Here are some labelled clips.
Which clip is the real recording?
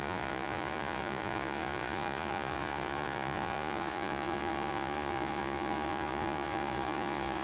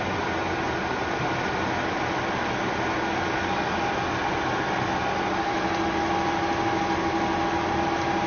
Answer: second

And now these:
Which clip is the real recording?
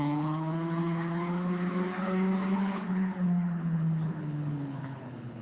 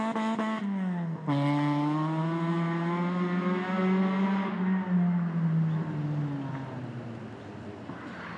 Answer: second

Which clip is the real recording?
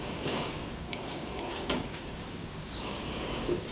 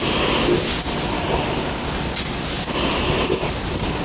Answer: second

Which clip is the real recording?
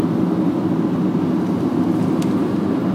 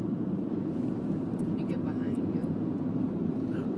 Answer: first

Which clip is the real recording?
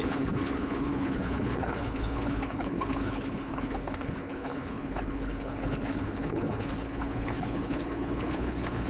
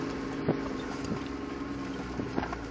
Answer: second